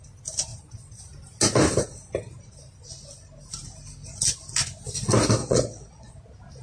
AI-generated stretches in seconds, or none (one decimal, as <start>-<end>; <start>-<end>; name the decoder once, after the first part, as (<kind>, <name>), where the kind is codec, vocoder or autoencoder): 5.4-6.1 (vocoder, Vocos)